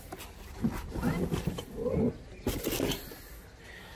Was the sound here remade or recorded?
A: recorded